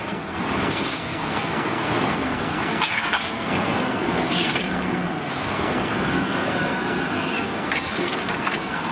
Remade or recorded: remade